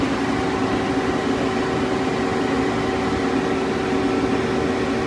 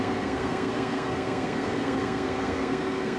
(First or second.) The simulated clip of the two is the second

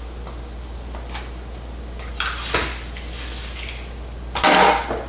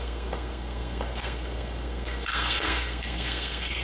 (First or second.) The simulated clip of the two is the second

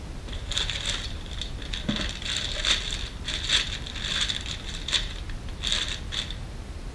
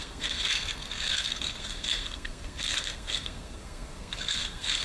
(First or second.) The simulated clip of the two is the second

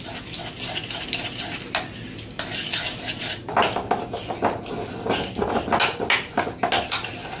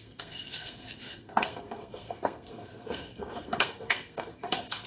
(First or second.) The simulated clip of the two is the second